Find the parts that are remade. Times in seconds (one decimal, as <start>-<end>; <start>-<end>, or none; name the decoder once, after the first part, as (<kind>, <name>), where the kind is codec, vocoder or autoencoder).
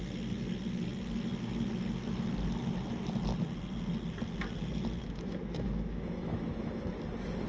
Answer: 5.0-6.9 (autoencoder, DAC-VAE)